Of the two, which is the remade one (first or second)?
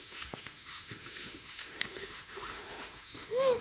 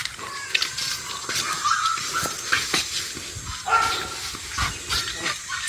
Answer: first